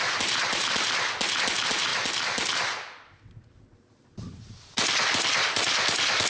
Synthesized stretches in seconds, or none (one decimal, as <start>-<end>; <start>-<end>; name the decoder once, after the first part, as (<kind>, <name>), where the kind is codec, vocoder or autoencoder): none